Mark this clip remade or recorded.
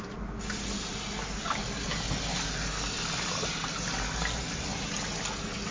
recorded